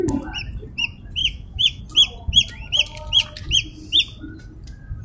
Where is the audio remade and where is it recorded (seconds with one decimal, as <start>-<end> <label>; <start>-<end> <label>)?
0.0-1.2 recorded; 1.2-1.8 remade; 1.8-5.0 recorded